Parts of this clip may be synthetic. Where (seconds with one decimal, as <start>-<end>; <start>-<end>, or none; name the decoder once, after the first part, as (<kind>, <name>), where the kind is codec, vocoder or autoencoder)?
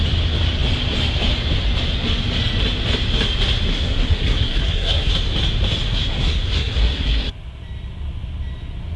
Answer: 3.7-5.1 (codec, SNAC); 5.9-7.3